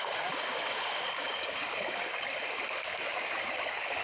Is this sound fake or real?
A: fake